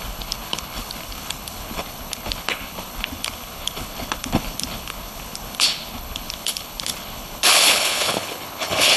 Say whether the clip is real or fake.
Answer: fake